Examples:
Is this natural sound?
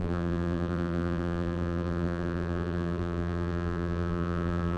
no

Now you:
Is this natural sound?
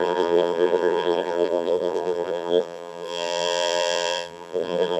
no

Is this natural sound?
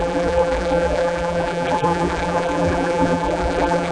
no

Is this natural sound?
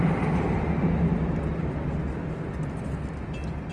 yes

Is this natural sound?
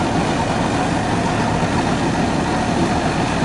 yes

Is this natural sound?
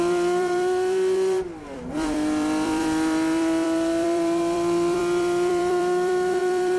no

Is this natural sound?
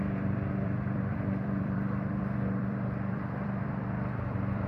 no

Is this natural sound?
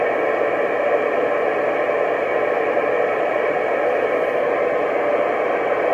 yes